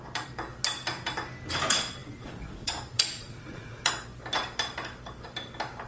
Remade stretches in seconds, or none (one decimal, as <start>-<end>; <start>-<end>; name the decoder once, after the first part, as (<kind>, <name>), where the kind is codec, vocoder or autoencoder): 2.0-3.9 (vocoder, Vocos)